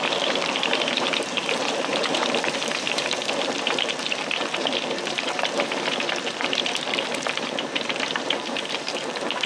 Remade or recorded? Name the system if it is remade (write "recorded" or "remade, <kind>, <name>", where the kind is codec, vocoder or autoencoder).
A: remade, vocoder, BigVGAN v2